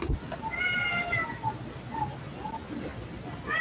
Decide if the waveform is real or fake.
real